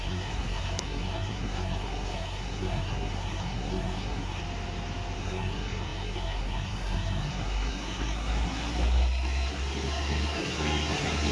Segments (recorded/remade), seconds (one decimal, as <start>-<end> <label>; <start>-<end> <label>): 0.0-4.4 remade; 4.4-5.2 recorded; 5.2-11.3 remade